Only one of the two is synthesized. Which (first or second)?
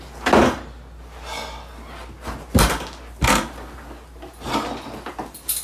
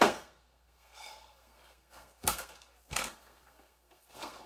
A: second